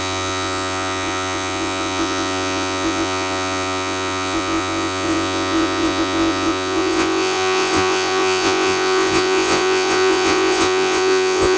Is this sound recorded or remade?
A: remade